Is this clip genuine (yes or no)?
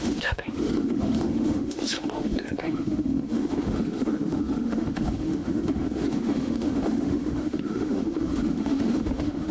no